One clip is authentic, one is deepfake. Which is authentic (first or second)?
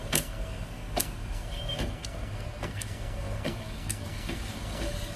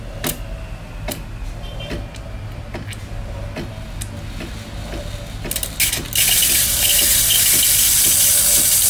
second